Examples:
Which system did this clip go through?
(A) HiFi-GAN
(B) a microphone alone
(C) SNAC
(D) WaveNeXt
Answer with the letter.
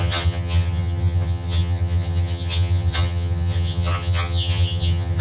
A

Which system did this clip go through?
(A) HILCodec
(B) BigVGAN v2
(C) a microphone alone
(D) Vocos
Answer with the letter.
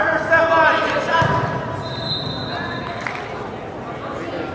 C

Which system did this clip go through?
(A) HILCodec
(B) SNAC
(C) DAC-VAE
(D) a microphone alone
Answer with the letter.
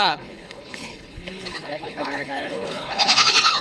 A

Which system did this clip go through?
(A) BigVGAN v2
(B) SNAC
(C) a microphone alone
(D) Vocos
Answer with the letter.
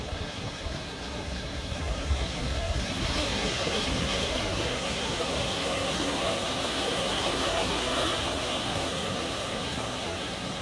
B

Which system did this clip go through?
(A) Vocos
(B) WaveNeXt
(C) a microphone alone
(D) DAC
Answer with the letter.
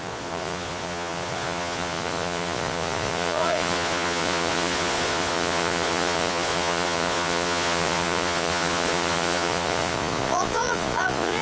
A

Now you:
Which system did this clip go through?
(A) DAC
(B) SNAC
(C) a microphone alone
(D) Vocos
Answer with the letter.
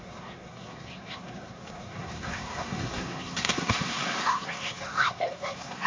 B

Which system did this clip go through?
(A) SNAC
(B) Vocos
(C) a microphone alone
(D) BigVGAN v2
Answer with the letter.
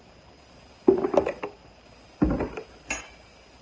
C